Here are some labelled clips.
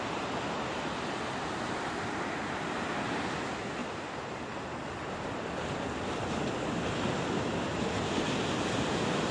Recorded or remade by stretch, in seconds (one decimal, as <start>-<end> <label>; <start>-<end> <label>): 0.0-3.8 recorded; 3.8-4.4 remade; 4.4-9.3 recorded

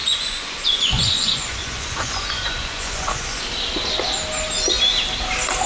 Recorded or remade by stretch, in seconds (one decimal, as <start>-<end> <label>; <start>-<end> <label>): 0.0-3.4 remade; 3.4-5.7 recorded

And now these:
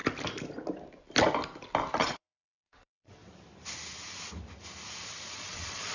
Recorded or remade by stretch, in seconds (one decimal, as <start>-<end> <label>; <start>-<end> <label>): 0.0-2.0 recorded; 2.0-3.2 remade; 3.2-5.3 recorded; 5.3-5.9 remade

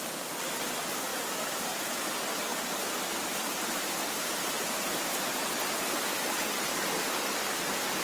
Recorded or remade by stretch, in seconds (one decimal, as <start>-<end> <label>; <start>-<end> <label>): 0.0-1.1 recorded; 1.1-2.1 remade; 2.1-2.5 recorded; 2.5-3.9 remade; 3.9-8.0 recorded

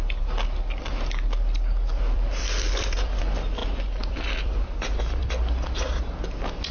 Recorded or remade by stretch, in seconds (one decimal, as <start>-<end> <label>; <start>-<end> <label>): 0.0-1.9 recorded; 1.9-3.2 remade; 3.2-3.6 recorded; 3.6-5.3 remade; 5.3-6.7 recorded